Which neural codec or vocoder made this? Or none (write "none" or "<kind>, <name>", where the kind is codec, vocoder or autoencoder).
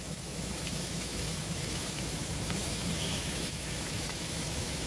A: autoencoder, DAC-VAE